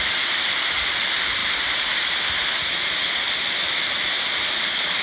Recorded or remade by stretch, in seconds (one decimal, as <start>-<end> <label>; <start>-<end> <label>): 0.0-1.4 recorded; 1.4-2.7 remade; 2.7-5.0 recorded